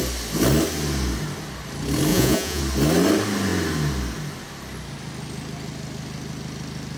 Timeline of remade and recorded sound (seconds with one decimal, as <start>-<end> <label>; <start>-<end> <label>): 0.0-2.1 recorded; 2.1-2.6 remade; 2.6-7.0 recorded